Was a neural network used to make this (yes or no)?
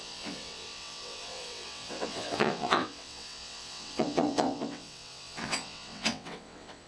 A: yes